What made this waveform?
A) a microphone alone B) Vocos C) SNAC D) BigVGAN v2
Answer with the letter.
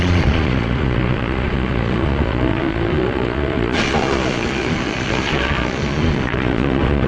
B